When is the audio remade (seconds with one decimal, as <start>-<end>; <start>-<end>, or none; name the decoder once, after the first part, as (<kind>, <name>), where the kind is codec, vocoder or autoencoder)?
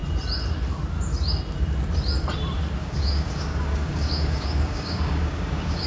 2.8-5.9 (codec, DAC)